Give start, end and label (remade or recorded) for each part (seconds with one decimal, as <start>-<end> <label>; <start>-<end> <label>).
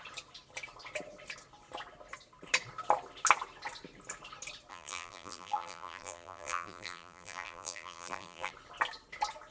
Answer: 0.0-4.7 recorded; 4.7-8.5 remade; 8.5-9.5 recorded